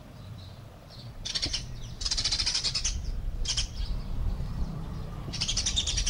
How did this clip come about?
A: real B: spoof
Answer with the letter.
B